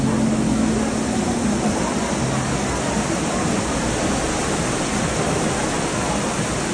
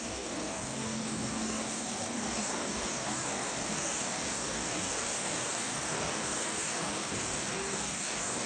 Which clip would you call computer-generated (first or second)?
second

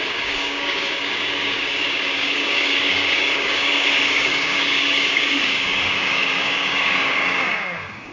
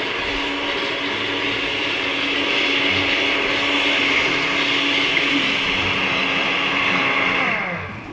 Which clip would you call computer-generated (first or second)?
first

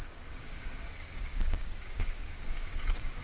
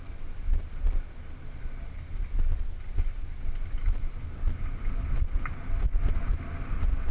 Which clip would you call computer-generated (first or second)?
first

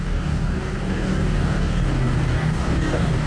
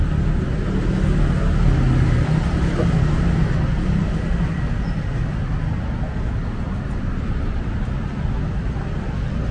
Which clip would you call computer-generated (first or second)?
first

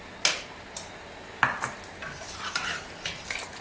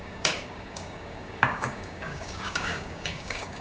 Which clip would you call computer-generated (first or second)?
second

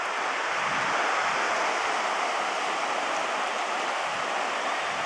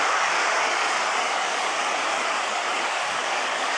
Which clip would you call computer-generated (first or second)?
second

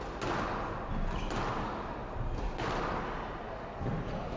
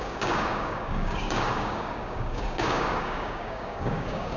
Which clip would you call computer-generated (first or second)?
second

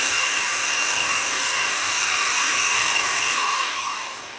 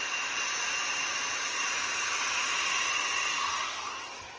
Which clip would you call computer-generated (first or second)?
first